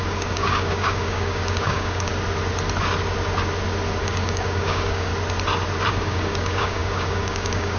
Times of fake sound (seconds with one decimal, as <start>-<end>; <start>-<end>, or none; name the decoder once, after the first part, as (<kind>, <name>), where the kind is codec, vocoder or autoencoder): 0.0-2.1 (codec, DAC); 4.0-5.1; 5.9-7.8

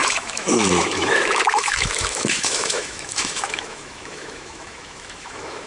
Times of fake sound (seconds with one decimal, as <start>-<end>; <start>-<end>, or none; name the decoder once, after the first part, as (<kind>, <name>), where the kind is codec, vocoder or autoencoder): 0.0-5.7 (autoencoder, DAC-VAE)

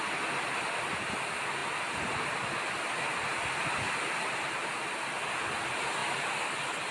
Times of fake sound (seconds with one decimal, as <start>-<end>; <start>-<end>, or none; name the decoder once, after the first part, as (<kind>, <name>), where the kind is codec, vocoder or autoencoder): none

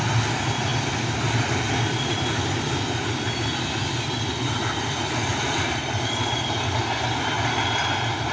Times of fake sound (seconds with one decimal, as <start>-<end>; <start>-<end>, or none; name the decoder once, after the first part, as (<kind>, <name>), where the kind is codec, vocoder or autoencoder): none

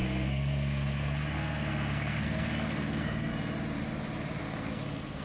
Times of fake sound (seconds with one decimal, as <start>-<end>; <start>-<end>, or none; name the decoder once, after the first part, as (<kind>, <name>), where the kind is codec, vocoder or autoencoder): 0.0-3.3 (codec, SNAC); 4.4-5.2

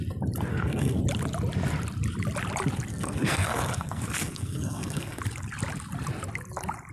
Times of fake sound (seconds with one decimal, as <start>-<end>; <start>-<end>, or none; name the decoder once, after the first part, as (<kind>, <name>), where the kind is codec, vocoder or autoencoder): 0.5-1.0 (codec, SNAC); 2.9-5.2

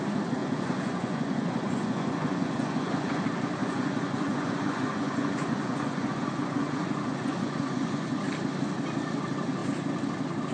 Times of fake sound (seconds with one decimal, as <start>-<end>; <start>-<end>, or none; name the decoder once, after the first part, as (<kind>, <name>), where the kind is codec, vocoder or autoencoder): 0.4-3.2 (vocoder, Vocos); 3.6-8.2

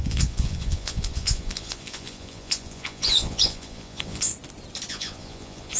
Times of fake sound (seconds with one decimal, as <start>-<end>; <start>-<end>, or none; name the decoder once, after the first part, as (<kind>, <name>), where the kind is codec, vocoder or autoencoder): 0.0-4.3 (vocoder, Vocos); 4.9-5.8